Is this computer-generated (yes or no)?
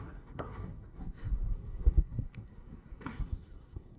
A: yes